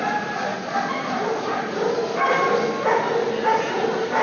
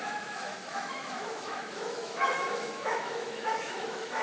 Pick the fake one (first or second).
second